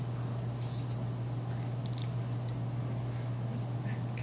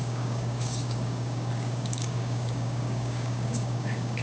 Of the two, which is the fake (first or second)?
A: second